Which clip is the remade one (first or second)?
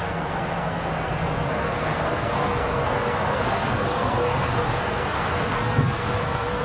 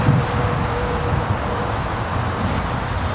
first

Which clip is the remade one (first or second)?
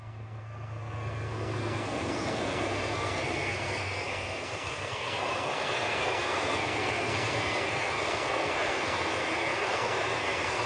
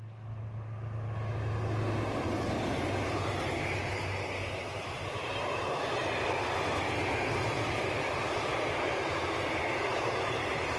first